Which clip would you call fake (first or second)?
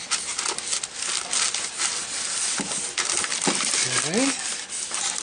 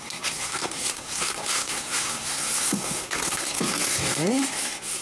second